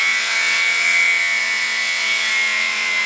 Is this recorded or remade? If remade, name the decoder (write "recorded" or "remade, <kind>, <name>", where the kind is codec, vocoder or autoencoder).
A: remade, vocoder, WaveNeXt